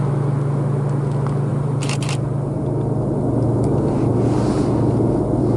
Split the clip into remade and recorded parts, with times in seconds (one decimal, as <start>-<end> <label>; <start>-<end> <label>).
0.0-1.5 recorded; 1.5-2.6 remade; 2.6-5.6 recorded